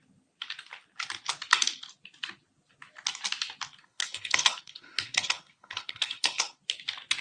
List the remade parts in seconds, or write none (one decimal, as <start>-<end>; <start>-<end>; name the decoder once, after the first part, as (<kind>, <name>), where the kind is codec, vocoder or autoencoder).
3.8-6.6 (codec, HILCodec)

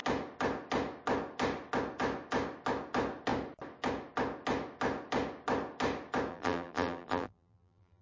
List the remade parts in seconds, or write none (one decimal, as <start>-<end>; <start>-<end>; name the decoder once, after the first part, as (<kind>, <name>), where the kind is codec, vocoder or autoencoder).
6.3-8.0 (vocoder, BigVGAN v2)

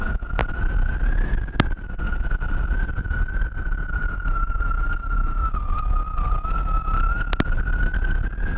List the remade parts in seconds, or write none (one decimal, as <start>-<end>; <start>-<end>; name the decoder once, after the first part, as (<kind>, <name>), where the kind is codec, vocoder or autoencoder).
none

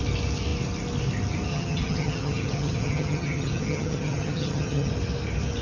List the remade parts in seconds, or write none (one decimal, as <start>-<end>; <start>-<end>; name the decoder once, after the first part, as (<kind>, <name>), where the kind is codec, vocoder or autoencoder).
1.5-4.9 (vocoder, HiFi-GAN)

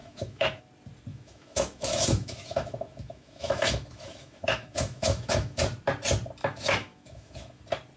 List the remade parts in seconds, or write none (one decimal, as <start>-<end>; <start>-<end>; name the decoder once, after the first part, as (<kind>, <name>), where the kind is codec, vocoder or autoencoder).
0.0-0.6 (autoencoder, DAC-VAE); 1.1-5.6; 6.4-7.6